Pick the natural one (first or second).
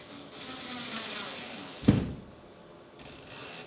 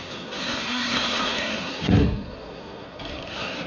first